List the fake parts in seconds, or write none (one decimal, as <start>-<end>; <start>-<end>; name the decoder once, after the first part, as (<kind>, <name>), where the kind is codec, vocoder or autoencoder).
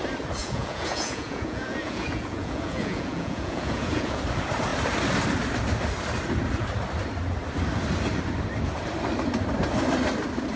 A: 0.4-4.2 (vocoder, Vocos)